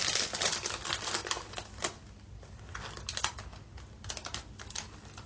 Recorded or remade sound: recorded